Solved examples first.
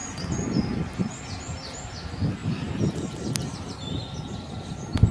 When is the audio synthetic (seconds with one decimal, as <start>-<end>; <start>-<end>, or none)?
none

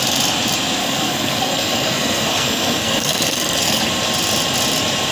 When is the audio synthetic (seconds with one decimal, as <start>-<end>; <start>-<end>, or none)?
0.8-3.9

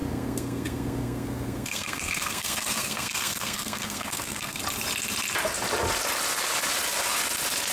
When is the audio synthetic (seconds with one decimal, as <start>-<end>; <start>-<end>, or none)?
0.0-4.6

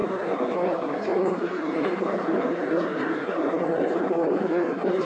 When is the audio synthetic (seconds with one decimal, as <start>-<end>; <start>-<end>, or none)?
0.0-5.0

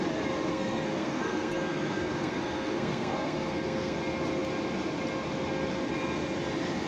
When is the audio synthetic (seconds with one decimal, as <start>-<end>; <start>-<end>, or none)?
0.5-4.0